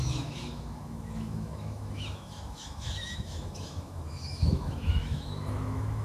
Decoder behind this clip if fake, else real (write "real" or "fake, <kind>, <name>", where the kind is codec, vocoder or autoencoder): fake, autoencoder, DAC-VAE